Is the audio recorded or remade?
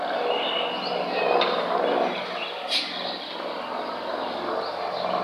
recorded